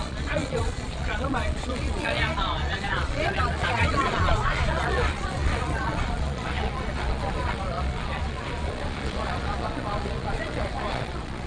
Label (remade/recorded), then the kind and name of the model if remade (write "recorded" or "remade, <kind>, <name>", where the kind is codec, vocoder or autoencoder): remade, vocoder, Vocos